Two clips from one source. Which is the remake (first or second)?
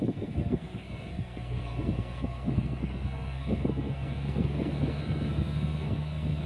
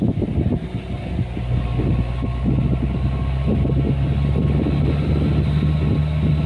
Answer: first